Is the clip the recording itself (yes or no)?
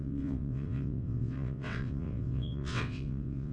no